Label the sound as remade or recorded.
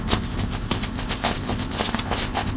remade